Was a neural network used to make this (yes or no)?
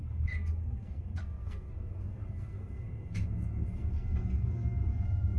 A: yes